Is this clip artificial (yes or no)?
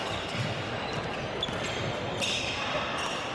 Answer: yes